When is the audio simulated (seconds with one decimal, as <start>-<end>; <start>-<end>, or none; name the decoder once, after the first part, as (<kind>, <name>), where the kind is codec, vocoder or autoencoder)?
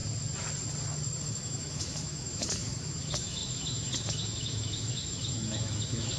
1.2-6.2 (autoencoder, DAC-VAE)